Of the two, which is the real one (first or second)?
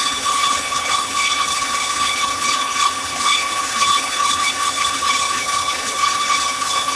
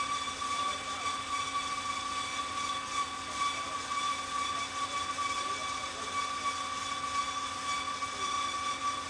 second